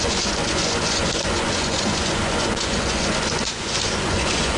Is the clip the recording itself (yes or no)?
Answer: no